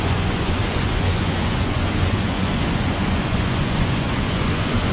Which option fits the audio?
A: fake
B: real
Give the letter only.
A